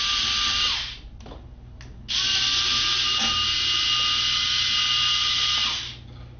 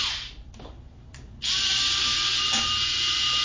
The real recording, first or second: first